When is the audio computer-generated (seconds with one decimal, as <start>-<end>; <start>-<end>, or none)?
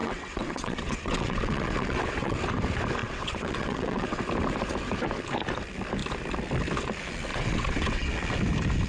0.0-2.4; 3.0-4.2; 7.3-8.1